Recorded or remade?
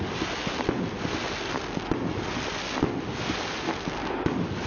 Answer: recorded